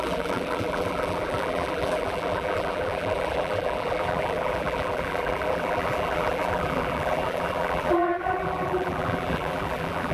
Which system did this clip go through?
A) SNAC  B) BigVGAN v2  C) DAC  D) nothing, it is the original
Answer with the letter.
B